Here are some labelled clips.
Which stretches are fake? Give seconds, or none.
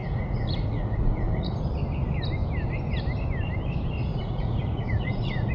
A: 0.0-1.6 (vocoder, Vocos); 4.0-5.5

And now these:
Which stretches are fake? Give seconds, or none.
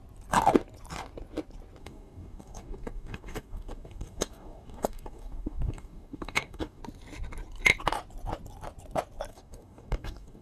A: 1.8-6.8 (codec, DAC); 9.3-10.4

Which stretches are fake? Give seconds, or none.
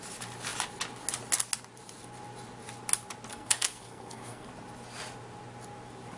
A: 3.3-4.5 (codec, SNAC)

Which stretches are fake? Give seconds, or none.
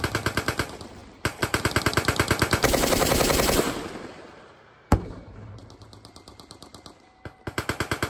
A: 0.0-6.7 (vocoder, BigVGAN v2)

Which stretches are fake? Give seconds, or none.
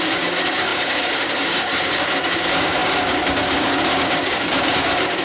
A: 0.0-5.2 (codec, DAC)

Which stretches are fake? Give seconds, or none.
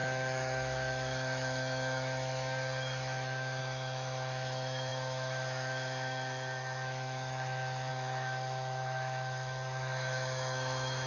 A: 0.0-11.1 (autoencoder, DAC-VAE)